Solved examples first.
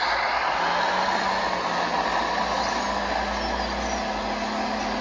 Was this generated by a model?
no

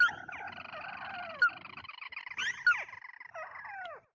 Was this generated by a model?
no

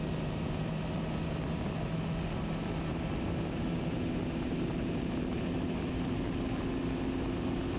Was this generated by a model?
no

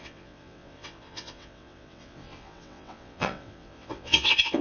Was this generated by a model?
yes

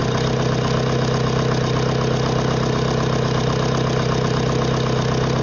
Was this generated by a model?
no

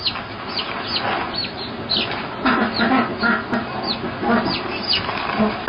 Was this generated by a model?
no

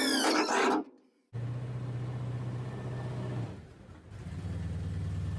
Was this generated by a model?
no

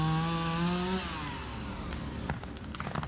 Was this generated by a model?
no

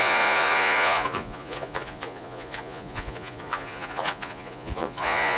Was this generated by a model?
yes